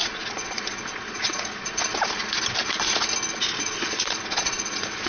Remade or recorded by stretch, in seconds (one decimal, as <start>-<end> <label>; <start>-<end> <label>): 0.0-1.8 remade; 1.8-3.3 recorded; 3.3-5.1 remade